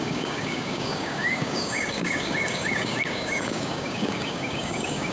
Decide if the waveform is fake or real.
fake